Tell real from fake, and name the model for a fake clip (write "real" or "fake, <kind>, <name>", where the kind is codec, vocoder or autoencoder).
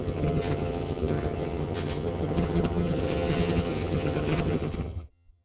fake, vocoder, HiFi-GAN